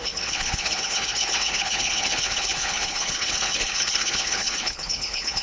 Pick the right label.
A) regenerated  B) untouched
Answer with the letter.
A